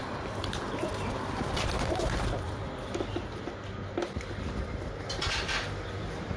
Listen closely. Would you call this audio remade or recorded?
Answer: recorded